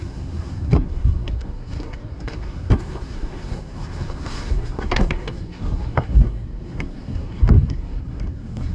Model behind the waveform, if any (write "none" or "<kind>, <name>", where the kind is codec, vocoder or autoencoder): codec, SNAC